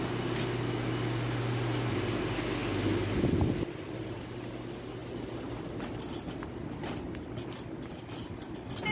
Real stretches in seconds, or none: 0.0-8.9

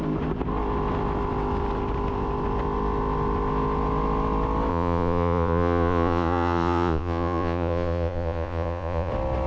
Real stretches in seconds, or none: 0.0-4.7; 9.1-9.5